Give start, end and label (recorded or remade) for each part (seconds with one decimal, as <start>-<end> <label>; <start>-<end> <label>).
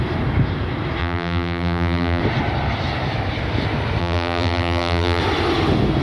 0.0-1.0 recorded; 1.0-2.2 remade; 2.2-4.0 recorded; 4.0-5.2 remade; 5.2-6.0 recorded